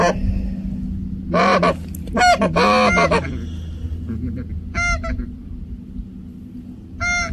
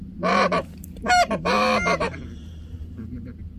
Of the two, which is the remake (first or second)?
second